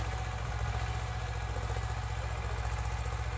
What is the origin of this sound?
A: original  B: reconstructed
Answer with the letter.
A